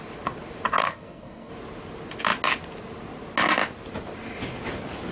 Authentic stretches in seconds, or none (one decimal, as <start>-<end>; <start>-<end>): 0.0-0.8; 1.5-5.1